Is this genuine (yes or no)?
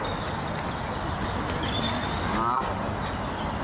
yes